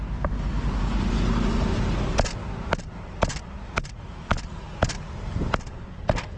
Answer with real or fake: real